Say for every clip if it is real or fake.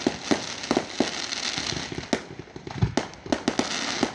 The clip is real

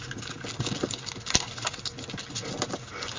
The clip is real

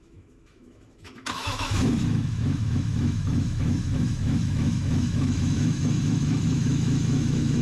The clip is fake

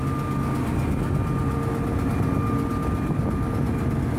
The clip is real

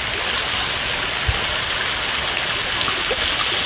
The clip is real